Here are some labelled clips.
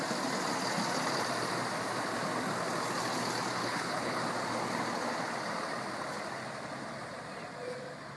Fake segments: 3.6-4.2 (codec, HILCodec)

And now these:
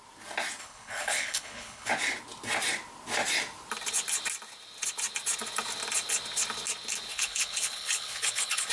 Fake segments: 0.6-1.9 (codec, HILCodec); 7.1-8.7

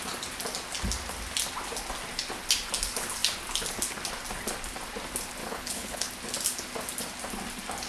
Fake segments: 5.4-6.1 (codec, HILCodec)

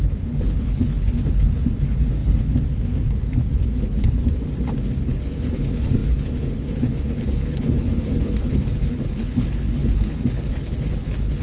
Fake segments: 0.0-4.2 (codec, HILCodec); 5.0-11.4

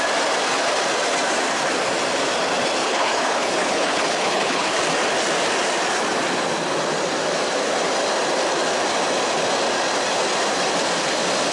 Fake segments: 2.8-4.8 (codec, HILCodec)

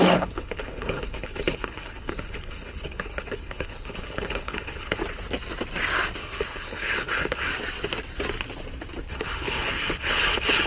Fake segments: 0.0-5.0 (codec, HILCodec); 6.2-7.5; 9.1-10.7

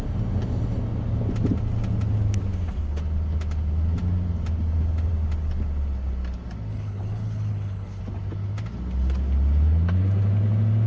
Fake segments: 6.7-8.0 (codec, HILCodec)